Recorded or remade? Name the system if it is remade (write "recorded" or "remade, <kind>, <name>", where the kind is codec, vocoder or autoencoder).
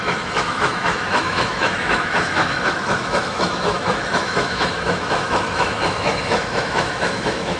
remade, autoencoder, DAC-VAE